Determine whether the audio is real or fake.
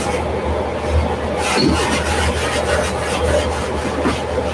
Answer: real